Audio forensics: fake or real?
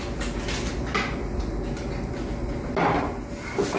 real